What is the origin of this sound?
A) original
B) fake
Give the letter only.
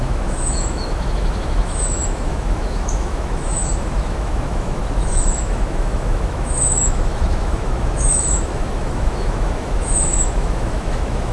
B